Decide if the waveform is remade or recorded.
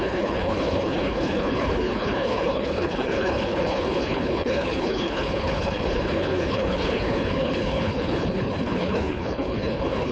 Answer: remade